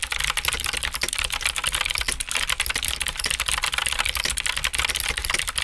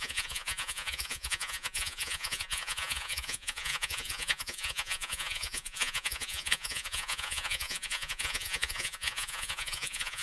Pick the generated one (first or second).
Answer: second